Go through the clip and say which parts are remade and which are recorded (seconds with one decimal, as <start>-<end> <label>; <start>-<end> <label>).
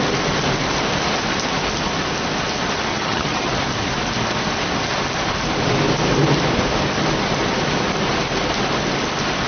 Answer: 0.0-2.9 recorded; 2.9-3.5 remade; 3.5-9.5 recorded